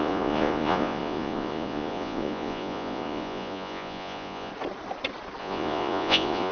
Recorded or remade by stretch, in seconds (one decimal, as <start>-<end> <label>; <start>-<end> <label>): 0.0-4.5 remade; 4.5-5.4 recorded; 5.4-6.5 remade